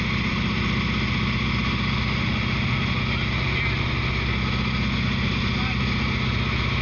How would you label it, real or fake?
real